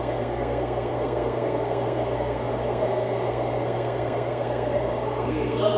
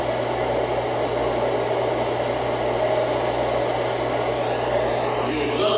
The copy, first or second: first